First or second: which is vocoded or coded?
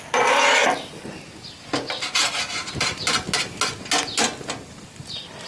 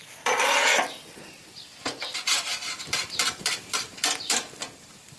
second